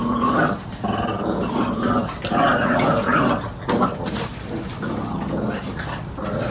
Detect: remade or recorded recorded